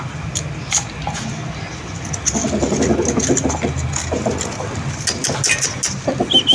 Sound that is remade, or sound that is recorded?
recorded